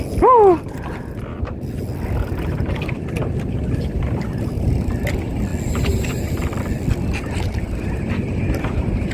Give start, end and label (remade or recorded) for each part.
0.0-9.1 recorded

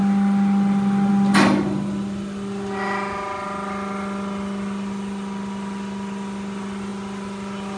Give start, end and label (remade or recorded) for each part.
0.0-7.8 recorded

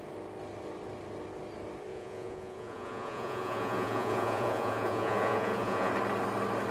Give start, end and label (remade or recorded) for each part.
0.0-1.9 recorded; 1.9-5.9 remade; 5.9-6.7 recorded

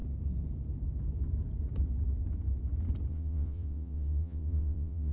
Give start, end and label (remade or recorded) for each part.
0.0-3.1 recorded; 3.1-5.1 remade

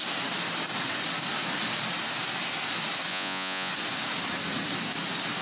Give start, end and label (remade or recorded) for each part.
0.0-3.1 recorded; 3.1-3.7 remade; 3.7-5.4 recorded

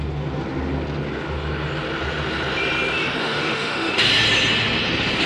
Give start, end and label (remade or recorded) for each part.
0.0-3.2 recorded; 3.2-4.1 remade; 4.1-5.3 recorded